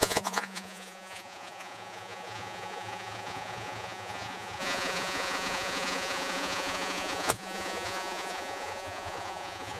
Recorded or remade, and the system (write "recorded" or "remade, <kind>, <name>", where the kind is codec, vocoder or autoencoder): remade, vocoder, Vocos